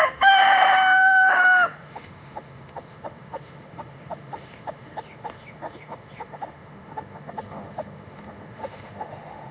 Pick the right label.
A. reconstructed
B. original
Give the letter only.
A